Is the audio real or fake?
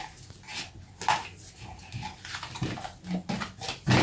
real